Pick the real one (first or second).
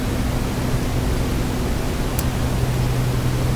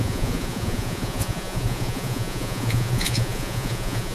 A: first